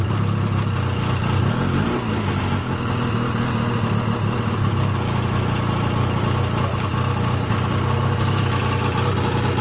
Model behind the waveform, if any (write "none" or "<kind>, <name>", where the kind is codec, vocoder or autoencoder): none